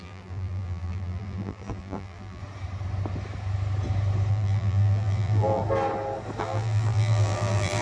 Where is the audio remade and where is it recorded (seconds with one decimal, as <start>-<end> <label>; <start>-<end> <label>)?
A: 0.0-2.4 remade; 2.4-4.3 recorded; 4.3-5.6 remade; 5.6-6.4 recorded; 6.4-7.8 remade